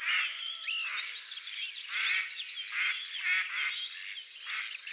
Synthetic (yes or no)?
no